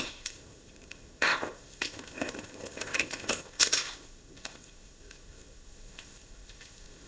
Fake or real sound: fake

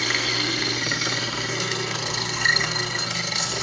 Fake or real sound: fake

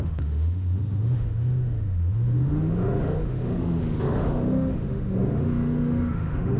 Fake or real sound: fake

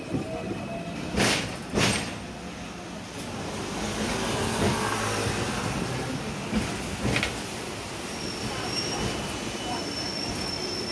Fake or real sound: real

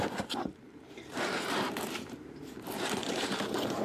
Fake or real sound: fake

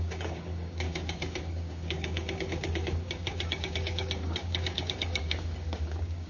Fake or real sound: fake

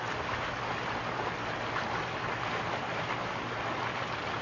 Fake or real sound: real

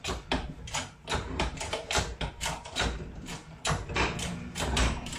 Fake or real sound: fake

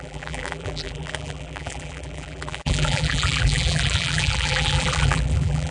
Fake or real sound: fake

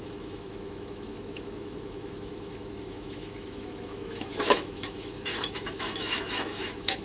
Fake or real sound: fake